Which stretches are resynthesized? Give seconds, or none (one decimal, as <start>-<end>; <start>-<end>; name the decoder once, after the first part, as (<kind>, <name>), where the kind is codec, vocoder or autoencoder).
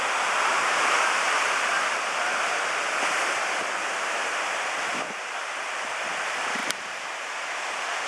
6.6-7.5 (vocoder, BigVGAN v2)